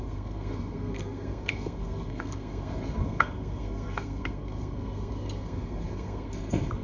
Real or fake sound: fake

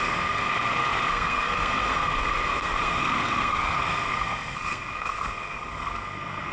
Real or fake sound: fake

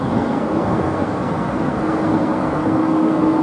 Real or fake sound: fake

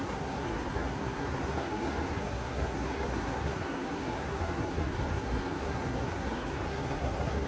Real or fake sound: fake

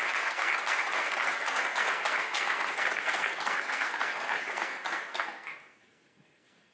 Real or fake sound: fake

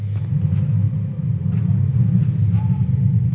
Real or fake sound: real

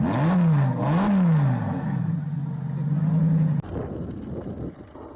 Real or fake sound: real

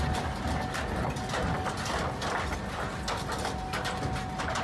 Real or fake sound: real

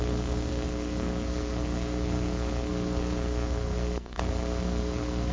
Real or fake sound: fake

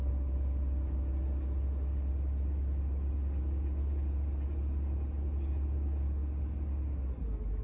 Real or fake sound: real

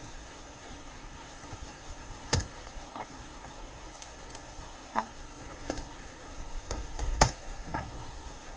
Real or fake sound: fake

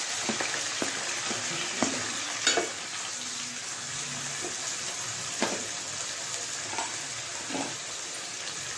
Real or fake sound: real